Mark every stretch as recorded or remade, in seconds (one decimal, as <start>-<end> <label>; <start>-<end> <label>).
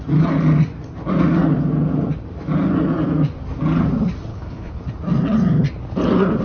0.0-4.3 recorded; 4.3-4.8 remade; 4.8-6.4 recorded